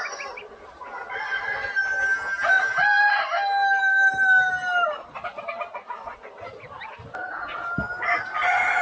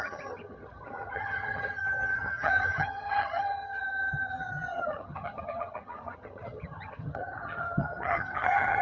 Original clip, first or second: first